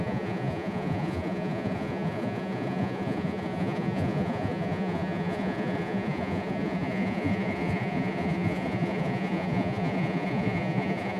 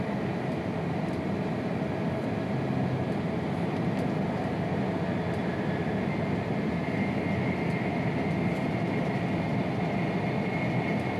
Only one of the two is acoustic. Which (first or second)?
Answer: second